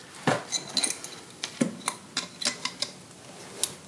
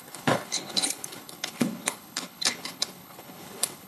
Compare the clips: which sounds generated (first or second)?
second